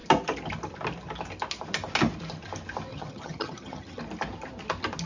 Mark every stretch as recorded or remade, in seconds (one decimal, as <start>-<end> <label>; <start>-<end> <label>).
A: 0.0-2.9 recorded; 2.9-4.0 remade; 4.0-5.1 recorded